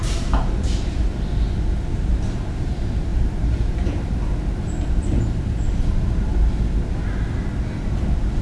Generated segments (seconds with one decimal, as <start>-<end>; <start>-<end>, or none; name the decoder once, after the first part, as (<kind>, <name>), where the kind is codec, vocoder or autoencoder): 0.0-1.1 (vocoder, BigVGAN v2); 1.9-6.3